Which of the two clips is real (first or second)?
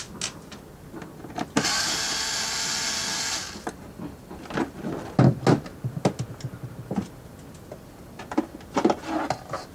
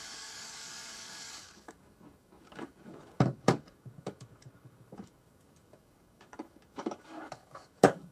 first